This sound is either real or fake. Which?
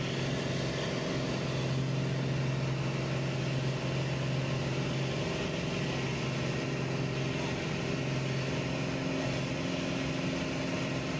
real